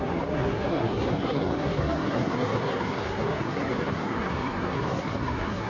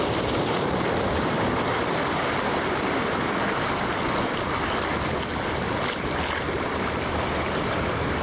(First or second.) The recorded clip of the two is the second